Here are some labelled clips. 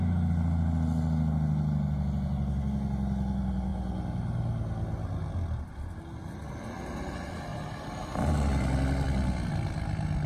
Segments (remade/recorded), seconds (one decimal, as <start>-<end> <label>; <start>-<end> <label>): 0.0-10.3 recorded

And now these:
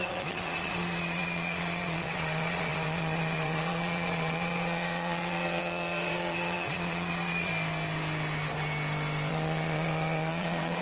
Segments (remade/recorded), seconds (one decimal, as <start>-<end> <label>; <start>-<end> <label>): 0.0-7.5 remade; 7.5-9.3 recorded; 9.3-10.8 remade

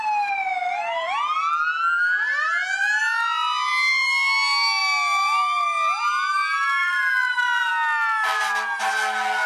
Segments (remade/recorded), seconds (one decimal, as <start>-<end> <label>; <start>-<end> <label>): 0.0-0.6 recorded; 0.6-3.0 remade; 3.0-6.8 recorded; 6.8-7.7 remade; 7.7-9.5 recorded

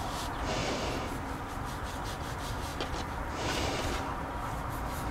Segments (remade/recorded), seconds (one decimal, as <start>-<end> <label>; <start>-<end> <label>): 0.0-0.6 recorded; 0.6-1.5 remade; 1.5-2.7 recorded; 2.7-3.9 remade; 3.9-5.1 recorded

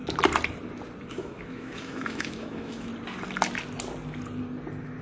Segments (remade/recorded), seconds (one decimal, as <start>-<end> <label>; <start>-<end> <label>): 0.0-1.1 recorded; 1.1-2.9 remade; 2.9-5.0 recorded